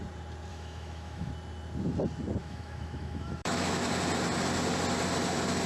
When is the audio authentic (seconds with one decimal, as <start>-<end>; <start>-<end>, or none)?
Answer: 0.0-0.5; 1.3-2.4; 3.9-5.7